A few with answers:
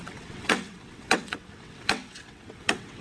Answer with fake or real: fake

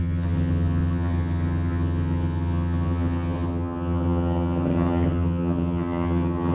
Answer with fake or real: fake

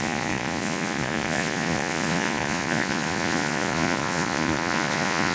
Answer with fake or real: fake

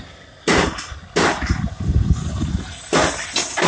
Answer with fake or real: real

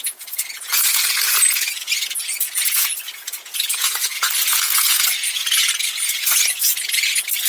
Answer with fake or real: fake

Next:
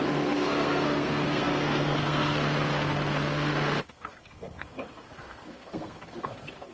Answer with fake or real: fake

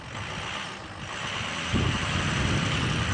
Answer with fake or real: real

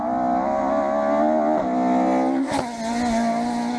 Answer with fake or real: real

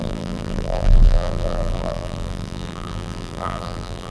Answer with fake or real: fake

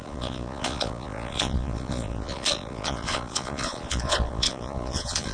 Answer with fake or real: fake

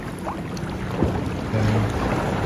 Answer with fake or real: real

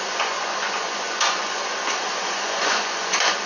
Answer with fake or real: fake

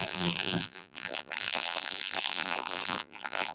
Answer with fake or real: fake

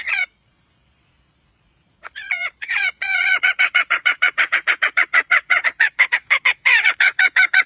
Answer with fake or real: fake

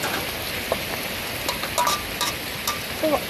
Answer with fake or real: real